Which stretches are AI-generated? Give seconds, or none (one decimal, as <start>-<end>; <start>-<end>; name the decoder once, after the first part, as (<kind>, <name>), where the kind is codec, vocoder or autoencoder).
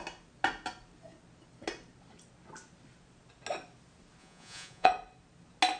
4.2-4.9 (vocoder, Vocos)